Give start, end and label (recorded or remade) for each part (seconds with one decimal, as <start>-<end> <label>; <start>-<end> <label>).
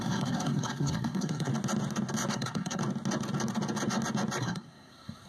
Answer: 0.0-1.5 remade; 1.5-2.3 recorded; 2.3-2.8 remade; 2.8-4.4 recorded; 4.4-5.3 remade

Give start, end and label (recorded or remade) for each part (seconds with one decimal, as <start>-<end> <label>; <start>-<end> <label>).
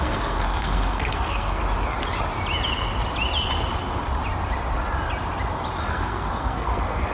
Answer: 0.0-1.6 remade; 1.6-5.9 recorded; 5.9-7.1 remade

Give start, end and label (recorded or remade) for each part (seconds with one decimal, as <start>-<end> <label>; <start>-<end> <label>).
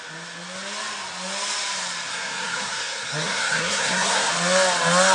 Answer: 0.0-2.1 recorded; 2.1-4.3 remade; 4.3-5.1 recorded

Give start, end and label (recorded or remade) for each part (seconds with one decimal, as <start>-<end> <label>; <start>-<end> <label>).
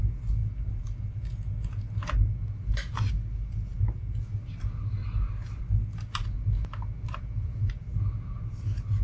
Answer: 0.0-9.0 recorded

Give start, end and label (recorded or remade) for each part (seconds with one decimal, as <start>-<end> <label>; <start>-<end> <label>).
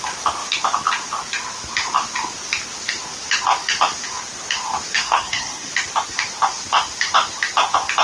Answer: 0.0-4.9 recorded; 4.9-5.7 remade; 5.7-8.0 recorded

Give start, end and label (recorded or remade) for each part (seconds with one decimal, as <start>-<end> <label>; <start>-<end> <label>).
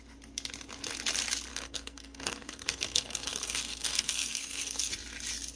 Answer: 0.0-1.5 recorded; 1.5-4.9 remade; 4.9-5.6 recorded